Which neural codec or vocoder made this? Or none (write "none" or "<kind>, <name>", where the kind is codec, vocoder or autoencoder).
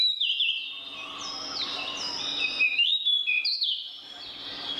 none